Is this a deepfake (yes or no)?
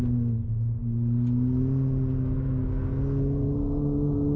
no